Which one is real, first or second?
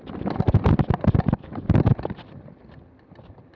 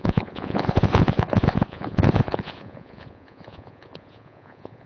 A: first